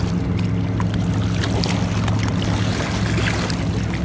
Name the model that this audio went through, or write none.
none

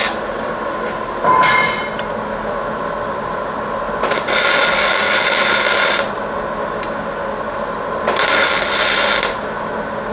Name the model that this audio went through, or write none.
none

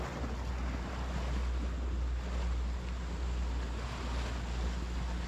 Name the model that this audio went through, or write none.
none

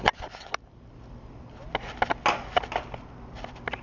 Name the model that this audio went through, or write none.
none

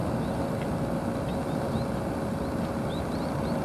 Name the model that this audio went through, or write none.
none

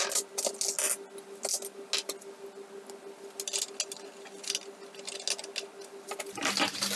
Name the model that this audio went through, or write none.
none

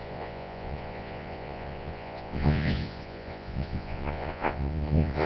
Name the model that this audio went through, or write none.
vocoder, Vocos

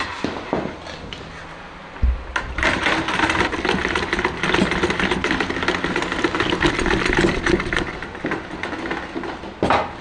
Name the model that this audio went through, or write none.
none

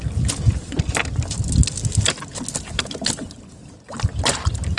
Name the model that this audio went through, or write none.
none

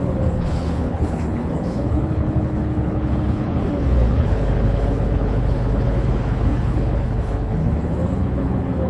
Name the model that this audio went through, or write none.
codec, HILCodec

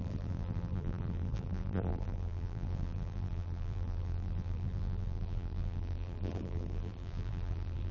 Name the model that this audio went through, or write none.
vocoder, BigVGAN v2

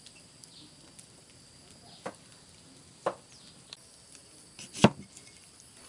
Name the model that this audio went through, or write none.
none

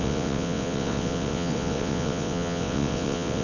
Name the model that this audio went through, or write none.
vocoder, WaveNeXt